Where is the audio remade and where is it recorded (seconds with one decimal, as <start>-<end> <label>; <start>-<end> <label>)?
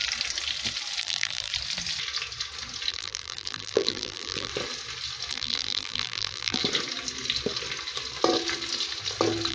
0.0-1.0 recorded; 1.0-1.5 remade; 1.5-2.9 recorded; 2.9-4.5 remade; 4.5-5.3 recorded; 5.3-6.6 remade; 6.6-9.5 recorded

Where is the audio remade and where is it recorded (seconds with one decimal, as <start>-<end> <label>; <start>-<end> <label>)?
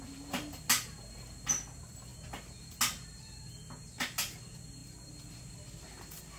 0.0-6.4 recorded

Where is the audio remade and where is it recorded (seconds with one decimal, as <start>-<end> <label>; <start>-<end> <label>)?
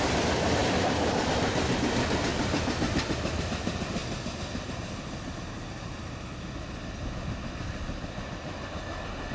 0.0-0.6 recorded; 0.6-1.5 remade; 1.5-9.3 recorded